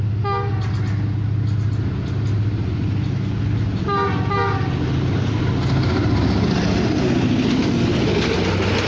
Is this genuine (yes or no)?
yes